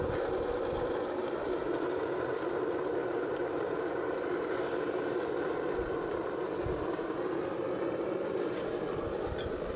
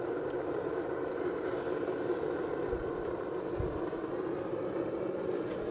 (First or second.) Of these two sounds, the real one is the second